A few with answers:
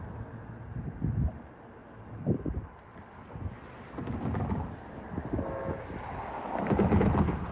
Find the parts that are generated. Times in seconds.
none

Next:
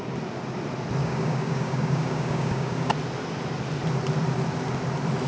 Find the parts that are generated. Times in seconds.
1.0-2.9 (codec, DAC)

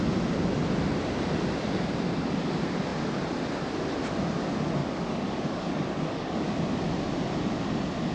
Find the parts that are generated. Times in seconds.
4.8-6.5 (codec, DAC)

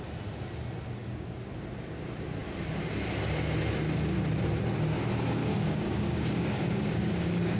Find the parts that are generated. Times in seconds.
1.0-1.5 (codec, DAC); 5.4-7.6